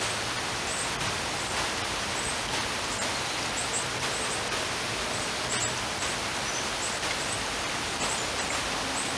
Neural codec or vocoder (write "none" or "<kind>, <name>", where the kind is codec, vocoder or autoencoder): none